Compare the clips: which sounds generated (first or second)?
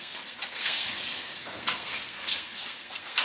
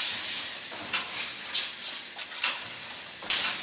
first